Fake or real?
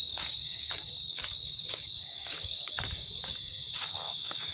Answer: fake